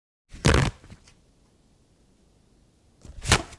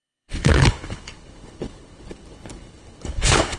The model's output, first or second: second